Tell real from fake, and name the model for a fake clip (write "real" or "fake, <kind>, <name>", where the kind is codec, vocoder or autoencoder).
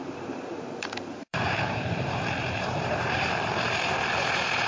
fake, vocoder, BigVGAN v2